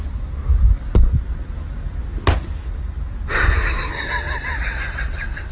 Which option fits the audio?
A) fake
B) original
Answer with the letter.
B